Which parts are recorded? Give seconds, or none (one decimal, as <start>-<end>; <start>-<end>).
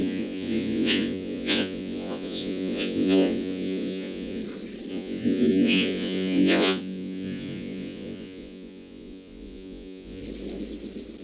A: 4.4-4.9; 10.2-11.2